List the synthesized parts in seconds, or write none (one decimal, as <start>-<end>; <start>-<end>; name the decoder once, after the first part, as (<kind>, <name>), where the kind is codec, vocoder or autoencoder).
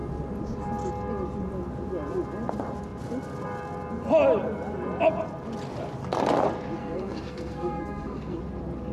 6.8-8.4 (codec, SNAC)